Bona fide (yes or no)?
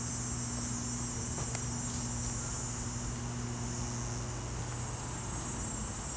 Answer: yes